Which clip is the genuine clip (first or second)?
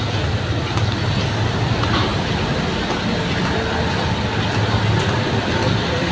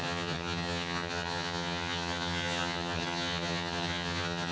first